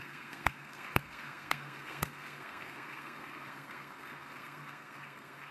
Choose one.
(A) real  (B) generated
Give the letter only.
B